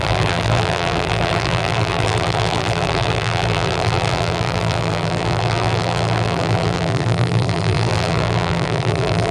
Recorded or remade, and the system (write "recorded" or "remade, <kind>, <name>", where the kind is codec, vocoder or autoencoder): remade, vocoder, BigVGAN v2